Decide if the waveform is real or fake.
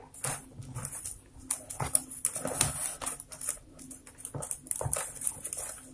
real